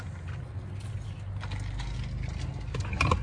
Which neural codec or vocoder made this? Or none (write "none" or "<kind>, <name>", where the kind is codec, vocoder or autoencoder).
none